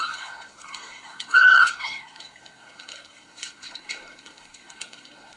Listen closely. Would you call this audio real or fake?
fake